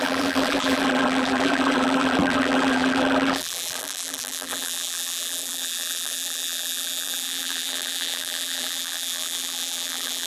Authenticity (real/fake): fake